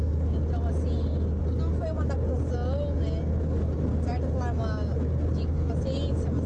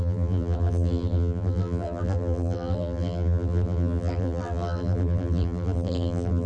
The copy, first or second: second